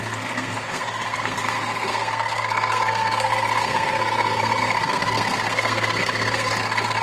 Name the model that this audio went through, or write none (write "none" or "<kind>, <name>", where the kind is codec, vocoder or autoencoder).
codec, SNAC